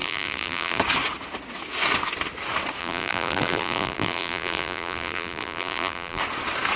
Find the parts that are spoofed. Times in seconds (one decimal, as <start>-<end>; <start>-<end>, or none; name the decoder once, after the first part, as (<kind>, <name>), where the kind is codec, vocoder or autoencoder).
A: 0.0-0.8 (vocoder, BigVGAN v2); 2.8-6.2